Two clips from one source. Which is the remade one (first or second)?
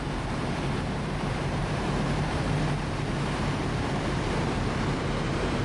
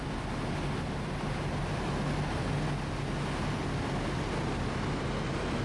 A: first